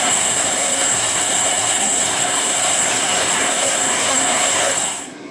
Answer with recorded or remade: remade